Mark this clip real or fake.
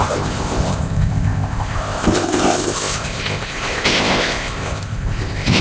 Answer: fake